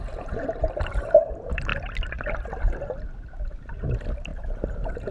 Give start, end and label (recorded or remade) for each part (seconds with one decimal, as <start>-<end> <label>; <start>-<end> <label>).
0.0-1.7 remade; 1.7-3.7 recorded; 3.7-5.1 remade